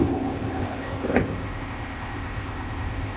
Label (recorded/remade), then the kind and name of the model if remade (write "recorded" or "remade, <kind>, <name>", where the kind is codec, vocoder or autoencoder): remade, codec, ZipCodec